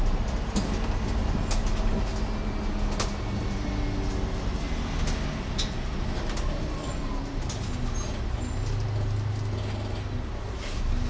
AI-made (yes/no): no